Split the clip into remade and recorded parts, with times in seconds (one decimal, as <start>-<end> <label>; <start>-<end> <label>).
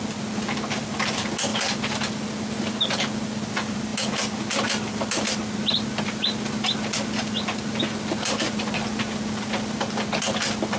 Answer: 0.0-10.8 recorded